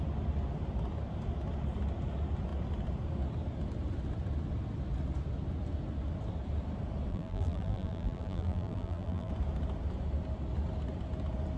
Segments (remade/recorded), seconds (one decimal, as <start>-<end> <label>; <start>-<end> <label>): 0.0-7.1 recorded; 7.1-9.3 remade; 9.3-11.6 recorded